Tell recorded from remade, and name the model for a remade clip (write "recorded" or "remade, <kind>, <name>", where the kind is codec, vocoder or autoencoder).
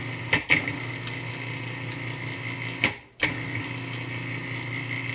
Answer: recorded